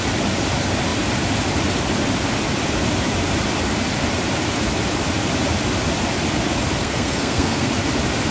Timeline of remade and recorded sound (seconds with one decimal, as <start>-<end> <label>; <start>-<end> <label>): 0.0-6.8 recorded; 6.8-7.7 remade; 7.7-8.3 recorded